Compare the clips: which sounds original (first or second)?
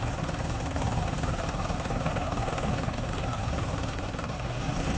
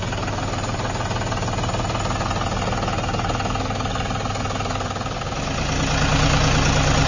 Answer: second